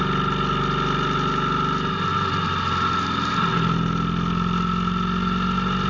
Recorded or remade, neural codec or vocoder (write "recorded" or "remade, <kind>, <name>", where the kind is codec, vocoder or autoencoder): recorded